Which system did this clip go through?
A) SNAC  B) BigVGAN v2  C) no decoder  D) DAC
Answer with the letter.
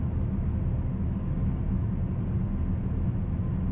C